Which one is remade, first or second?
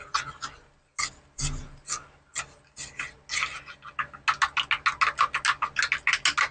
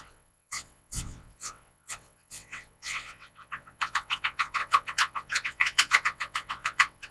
second